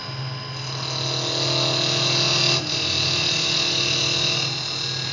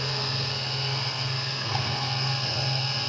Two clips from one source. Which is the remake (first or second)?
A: second